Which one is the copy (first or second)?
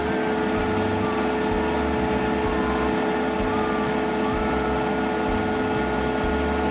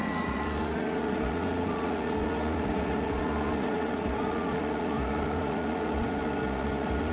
second